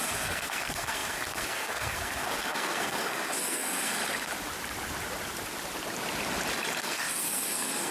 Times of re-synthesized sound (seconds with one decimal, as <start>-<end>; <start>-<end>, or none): 0.0-4.0; 6.8-7.9